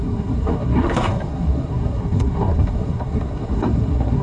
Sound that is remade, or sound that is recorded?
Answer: remade